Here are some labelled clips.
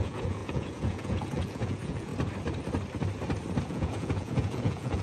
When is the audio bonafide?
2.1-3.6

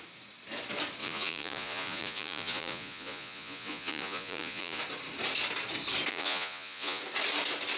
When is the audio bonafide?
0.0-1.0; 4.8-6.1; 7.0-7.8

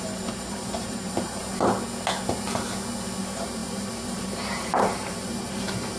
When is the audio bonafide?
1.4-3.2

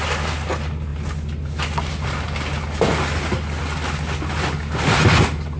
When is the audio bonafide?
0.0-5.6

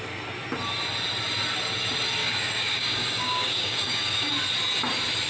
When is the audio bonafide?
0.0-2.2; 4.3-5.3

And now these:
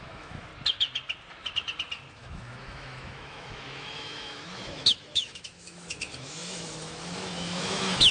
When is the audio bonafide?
0.5-2.1

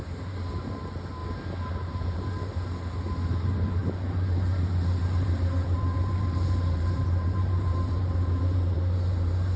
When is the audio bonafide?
1.2-1.7

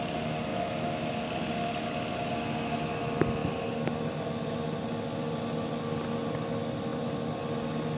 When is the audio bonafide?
0.0-0.5; 1.1-8.0